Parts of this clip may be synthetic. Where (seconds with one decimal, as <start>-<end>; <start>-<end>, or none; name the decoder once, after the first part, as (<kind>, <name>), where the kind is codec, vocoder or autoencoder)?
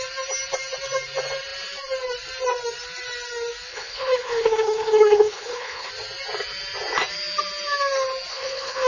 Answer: 3.7-5.9 (codec, HILCodec); 8.3-8.9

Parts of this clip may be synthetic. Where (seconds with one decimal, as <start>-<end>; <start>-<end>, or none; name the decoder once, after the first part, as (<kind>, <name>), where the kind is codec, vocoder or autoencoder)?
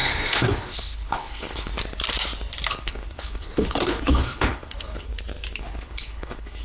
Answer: 0.0-1.7 (codec, HILCodec); 2.7-5.1; 5.6-6.6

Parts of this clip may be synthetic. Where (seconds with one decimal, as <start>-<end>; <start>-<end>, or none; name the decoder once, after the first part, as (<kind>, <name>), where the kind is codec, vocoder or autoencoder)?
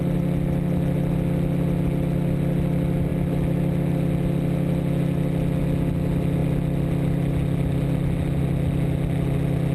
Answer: none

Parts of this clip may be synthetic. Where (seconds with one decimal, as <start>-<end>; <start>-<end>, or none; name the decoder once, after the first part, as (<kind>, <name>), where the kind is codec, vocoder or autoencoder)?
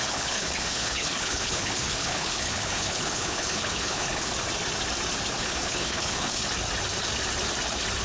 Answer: 0.0-4.3 (codec, HILCodec); 5.4-6.4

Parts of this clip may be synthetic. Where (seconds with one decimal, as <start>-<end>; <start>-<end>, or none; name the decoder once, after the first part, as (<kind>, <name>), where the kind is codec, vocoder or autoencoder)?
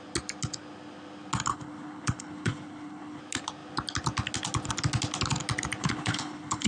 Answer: 1.5-3.2 (codec, HILCodec); 5.8-6.7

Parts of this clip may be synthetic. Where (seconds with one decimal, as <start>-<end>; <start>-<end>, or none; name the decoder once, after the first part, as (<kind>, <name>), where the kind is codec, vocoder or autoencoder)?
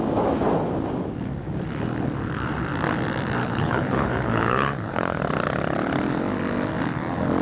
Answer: 3.4-5.2 (codec, HILCodec)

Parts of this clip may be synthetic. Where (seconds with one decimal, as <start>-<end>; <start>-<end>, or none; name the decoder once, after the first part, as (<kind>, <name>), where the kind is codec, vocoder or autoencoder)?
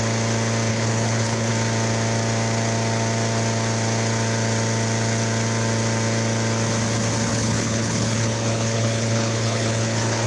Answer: 0.7-1.5 (codec, HILCodec); 7.3-10.3